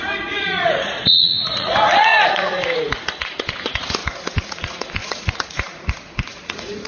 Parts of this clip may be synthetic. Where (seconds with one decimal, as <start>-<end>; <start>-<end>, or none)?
0.0-6.9